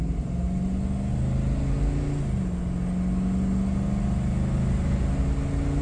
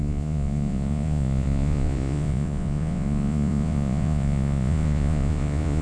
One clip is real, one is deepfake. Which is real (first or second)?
first